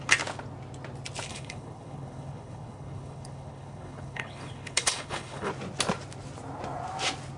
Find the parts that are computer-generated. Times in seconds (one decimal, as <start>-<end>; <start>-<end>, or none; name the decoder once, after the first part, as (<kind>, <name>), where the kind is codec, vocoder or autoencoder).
1.3-5.5 (codec, HILCodec)

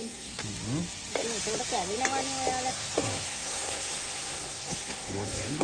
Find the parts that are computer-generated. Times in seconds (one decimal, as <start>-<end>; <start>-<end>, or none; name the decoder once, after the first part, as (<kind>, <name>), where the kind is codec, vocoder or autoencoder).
0.0-0.4 (codec, SNAC); 2.7-5.6